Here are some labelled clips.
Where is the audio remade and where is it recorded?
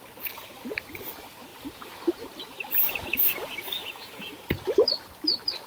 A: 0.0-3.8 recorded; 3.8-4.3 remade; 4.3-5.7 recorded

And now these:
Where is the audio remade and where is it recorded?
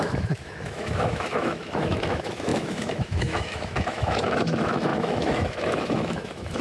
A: 0.0-6.6 remade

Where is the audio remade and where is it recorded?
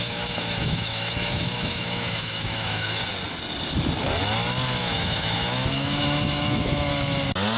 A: 0.0-3.0 remade; 3.0-4.8 recorded; 4.8-6.9 remade; 6.9-7.6 recorded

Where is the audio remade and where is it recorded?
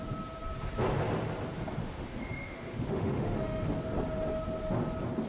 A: 0.0-1.8 recorded; 1.8-3.7 remade; 3.7-5.3 recorded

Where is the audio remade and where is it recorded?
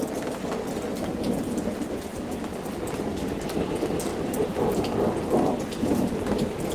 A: 0.0-6.7 recorded